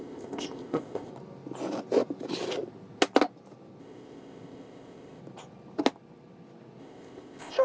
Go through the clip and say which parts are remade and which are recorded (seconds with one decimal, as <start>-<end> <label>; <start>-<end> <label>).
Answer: 0.0-1.1 remade; 1.1-3.8 recorded; 3.8-5.2 remade; 5.2-6.8 recorded; 6.8-7.6 remade